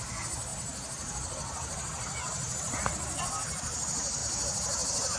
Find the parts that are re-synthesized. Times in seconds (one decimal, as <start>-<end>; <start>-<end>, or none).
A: none